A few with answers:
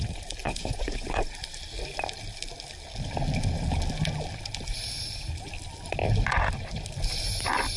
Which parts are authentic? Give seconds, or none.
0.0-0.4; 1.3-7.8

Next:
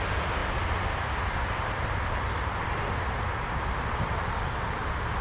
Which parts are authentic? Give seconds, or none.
0.0-5.2

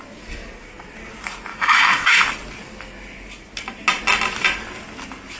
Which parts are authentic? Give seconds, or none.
0.0-1.5; 2.2-5.4

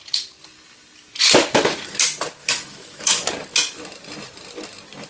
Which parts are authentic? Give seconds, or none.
0.0-2.4; 3.3-5.1

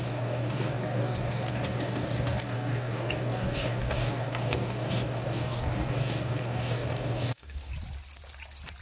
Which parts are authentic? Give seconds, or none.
7.7-8.8